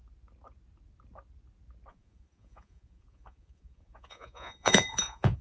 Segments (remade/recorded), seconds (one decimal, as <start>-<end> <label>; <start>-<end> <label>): 0.0-1.9 recorded; 1.9-5.4 remade